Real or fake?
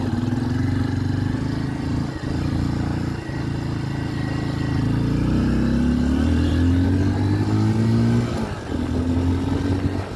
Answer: real